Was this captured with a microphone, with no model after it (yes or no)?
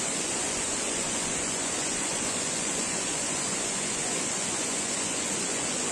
no